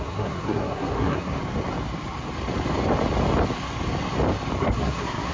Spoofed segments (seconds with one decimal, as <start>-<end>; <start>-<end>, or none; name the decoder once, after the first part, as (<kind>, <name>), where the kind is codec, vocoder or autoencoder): 0.0-1.4 (codec, SNAC); 4.6-5.3